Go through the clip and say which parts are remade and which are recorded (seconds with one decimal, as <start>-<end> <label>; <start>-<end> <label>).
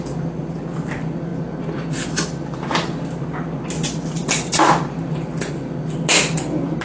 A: 0.0-6.8 recorded